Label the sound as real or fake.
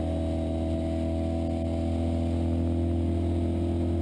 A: real